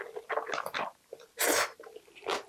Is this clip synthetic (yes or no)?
no